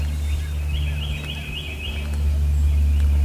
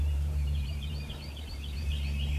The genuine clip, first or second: first